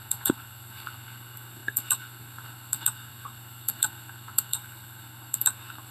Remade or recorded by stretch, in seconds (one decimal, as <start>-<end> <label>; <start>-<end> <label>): 0.0-5.9 remade